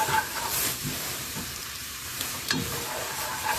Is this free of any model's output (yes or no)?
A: no